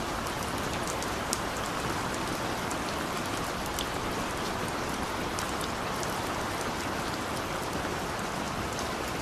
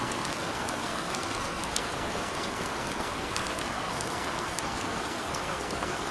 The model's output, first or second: second